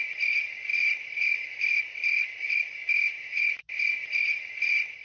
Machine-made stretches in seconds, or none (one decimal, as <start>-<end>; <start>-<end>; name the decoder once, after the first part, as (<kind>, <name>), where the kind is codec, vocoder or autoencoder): none